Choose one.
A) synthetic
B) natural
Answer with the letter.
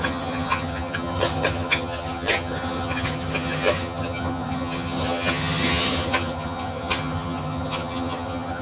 A